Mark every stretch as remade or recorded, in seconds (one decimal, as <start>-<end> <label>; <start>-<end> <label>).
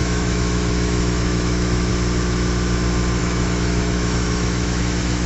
0.0-1.9 remade; 1.9-3.2 recorded; 3.2-5.3 remade